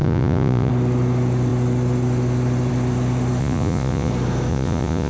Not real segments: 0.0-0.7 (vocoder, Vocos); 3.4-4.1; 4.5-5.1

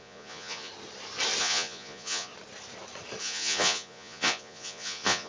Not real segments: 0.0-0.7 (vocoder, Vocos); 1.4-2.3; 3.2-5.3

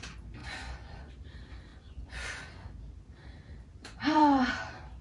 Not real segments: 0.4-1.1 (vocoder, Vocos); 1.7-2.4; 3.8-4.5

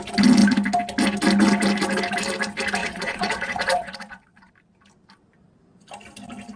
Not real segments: 2.8-4.5 (vocoder, Vocos)

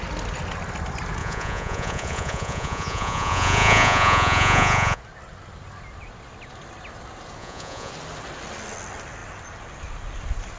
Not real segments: 1.2-5.0 (vocoder, Vocos); 7.4-7.9

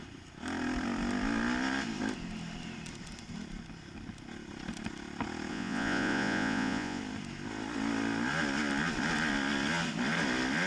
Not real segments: 5.5-7.0 (vocoder, Vocos)

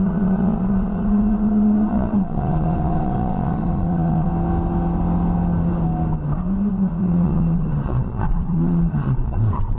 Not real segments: 0.0-4.3 (vocoder, Vocos); 6.7-9.8

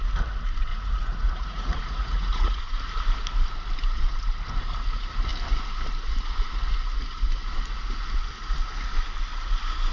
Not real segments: 0.7-2.6 (vocoder, Vocos)